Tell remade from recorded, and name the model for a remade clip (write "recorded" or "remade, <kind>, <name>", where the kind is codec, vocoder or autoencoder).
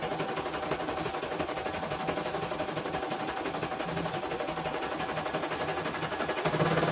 recorded